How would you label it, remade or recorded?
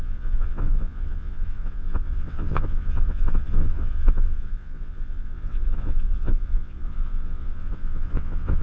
remade